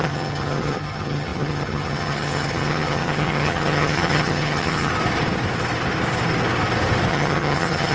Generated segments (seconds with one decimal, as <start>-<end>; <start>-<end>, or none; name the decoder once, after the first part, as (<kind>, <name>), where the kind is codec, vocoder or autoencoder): 0.0-4.9 (vocoder, HiFi-GAN); 7.1-7.9